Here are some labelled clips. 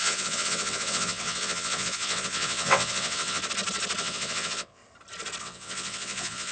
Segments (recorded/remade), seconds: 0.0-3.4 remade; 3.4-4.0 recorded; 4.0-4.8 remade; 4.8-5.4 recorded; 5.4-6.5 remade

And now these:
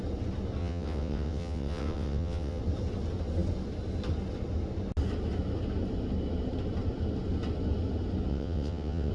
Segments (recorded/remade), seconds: 0.0-0.6 recorded; 0.6-2.6 remade; 2.6-8.3 recorded; 8.3-9.1 remade

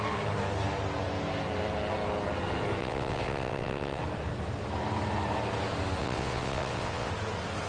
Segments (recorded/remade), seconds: 0.0-2.8 recorded; 2.8-4.0 remade; 4.0-6.0 recorded; 6.0-7.1 remade; 7.1-7.7 recorded

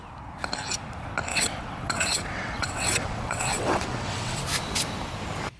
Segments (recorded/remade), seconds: 0.0-1.3 recorded; 1.3-4.4 remade; 4.4-5.6 recorded

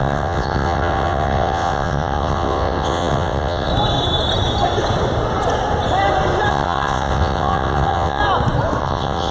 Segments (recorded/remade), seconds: 0.0-3.7 remade; 3.7-6.5 recorded; 6.5-8.2 remade; 8.2-8.8 recorded; 8.8-9.3 remade

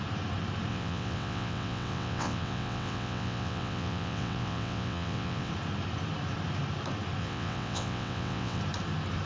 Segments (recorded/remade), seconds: 0.0-0.7 recorded; 0.7-5.5 remade; 5.5-7.2 recorded; 7.2-8.6 remade; 8.6-9.3 recorded